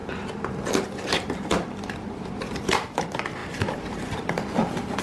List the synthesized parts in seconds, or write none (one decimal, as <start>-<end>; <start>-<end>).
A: 0.0-3.0; 3.4-4.3